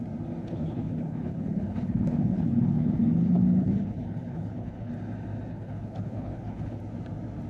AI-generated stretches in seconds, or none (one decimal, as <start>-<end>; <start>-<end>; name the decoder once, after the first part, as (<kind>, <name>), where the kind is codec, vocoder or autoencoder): 0.4-4.9 (codec, HILCodec); 5.5-6.8